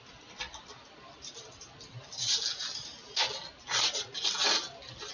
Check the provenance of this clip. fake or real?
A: real